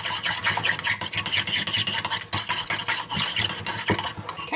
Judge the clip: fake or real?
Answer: real